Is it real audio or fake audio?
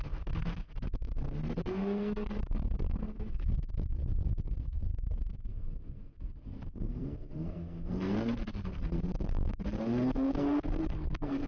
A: fake